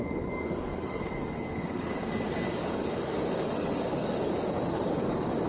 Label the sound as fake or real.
fake